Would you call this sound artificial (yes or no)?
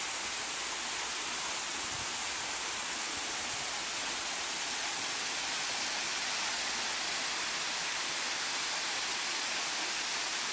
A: no